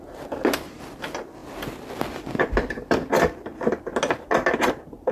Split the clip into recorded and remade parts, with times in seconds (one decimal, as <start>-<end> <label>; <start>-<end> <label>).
0.0-5.1 recorded